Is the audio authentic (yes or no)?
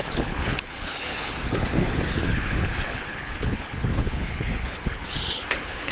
no